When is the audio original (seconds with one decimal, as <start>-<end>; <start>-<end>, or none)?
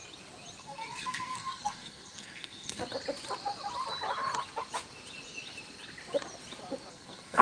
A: 0.0-0.6; 2.8-6.9